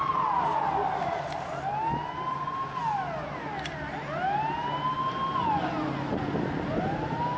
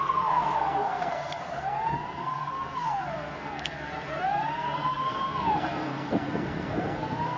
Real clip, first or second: first